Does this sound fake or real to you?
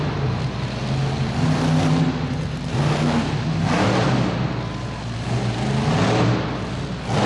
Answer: real